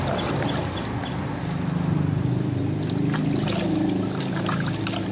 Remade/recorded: recorded